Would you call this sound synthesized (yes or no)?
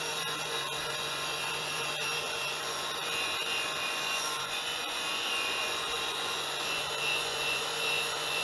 yes